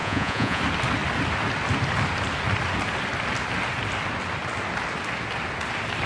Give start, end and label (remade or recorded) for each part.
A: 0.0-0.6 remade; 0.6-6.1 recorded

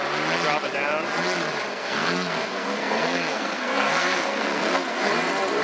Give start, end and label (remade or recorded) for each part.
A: 0.0-1.7 recorded; 1.7-5.1 remade; 5.1-5.6 recorded

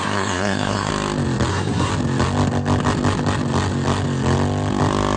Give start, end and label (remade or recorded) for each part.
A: 0.0-0.9 remade; 0.9-1.5 recorded; 1.5-1.9 remade; 1.9-5.2 recorded

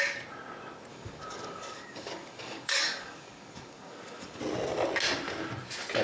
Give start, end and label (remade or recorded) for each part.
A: 0.0-0.9 recorded; 0.9-4.4 remade; 4.4-6.0 recorded

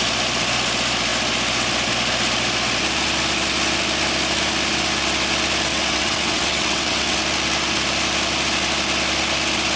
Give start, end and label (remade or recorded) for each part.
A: 0.0-5.7 recorded; 5.7-7.2 remade; 7.2-9.8 recorded

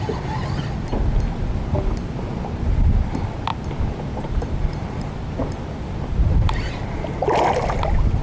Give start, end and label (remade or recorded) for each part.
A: 0.0-3.5 recorded; 3.5-6.8 remade; 6.8-8.2 recorded

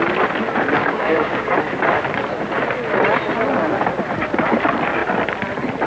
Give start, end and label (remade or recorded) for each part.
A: 0.0-0.8 recorded; 0.8-1.5 remade; 1.5-5.9 recorded

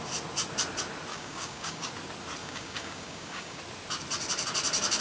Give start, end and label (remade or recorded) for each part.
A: 0.0-1.1 recorded; 1.1-1.9 remade; 1.9-2.4 recorded; 2.4-3.6 remade; 3.6-5.0 recorded